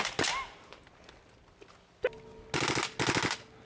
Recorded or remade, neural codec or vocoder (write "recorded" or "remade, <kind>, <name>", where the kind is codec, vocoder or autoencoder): recorded